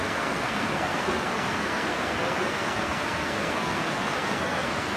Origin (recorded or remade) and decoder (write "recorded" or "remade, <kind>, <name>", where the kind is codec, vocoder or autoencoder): remade, codec, SNAC